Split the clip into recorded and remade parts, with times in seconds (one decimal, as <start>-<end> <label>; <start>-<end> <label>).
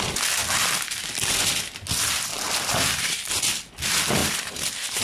0.0-2.3 recorded; 2.3-3.4 remade; 3.4-4.2 recorded; 4.2-5.0 remade